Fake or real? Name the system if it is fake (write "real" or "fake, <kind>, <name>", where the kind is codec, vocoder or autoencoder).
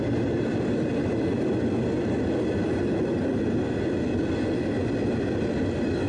real